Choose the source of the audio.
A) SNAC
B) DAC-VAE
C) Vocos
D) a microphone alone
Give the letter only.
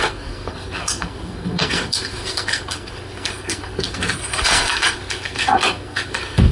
A